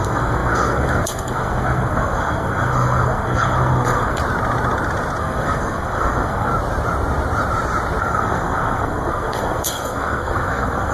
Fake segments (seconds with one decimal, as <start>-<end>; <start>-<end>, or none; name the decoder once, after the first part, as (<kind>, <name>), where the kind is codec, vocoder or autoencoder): 0.0-4.2 (codec, SNAC); 5.2-6.5; 8.0-10.9